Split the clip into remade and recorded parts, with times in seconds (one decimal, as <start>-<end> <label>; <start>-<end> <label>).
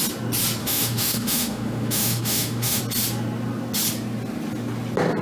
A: 0.0-0.6 recorded; 0.6-2.8 remade; 2.8-5.2 recorded